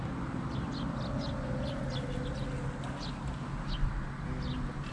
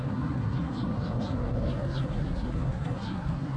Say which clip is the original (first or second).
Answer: first